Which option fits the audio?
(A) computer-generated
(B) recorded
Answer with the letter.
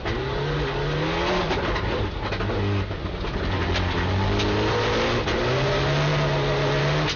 B